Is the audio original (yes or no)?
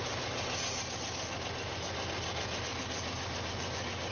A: yes